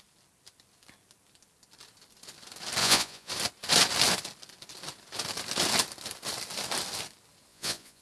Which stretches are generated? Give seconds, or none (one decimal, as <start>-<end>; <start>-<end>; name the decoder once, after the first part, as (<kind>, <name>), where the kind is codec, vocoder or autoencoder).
2.8-3.3 (vocoder, Vocos); 7.5-8.0